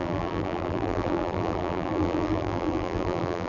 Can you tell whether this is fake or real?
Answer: fake